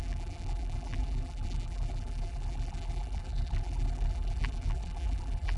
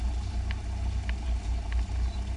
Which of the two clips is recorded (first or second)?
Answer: second